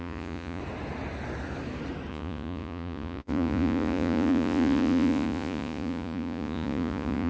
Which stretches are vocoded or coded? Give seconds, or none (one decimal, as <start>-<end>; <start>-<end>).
0.0-0.6; 2.1-7.3